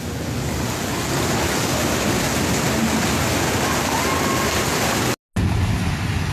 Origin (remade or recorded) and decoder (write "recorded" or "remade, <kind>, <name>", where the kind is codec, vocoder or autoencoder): recorded